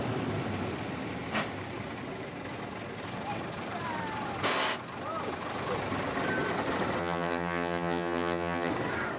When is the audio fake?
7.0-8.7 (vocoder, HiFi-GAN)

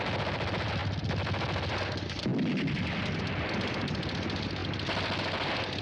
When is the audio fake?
none